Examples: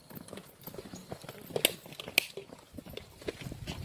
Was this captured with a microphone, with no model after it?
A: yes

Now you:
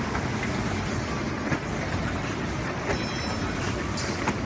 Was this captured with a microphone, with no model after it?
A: yes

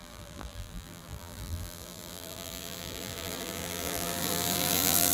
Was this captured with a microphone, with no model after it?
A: no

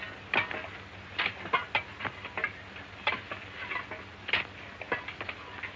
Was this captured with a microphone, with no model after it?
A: yes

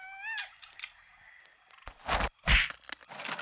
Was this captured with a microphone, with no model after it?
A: yes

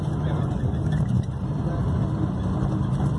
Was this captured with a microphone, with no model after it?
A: yes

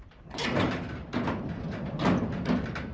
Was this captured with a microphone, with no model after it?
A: yes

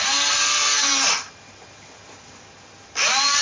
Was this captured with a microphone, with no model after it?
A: no